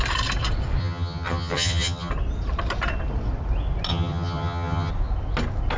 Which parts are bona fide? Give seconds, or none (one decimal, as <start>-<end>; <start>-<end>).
0.0-0.8; 2.1-3.9; 4.9-5.8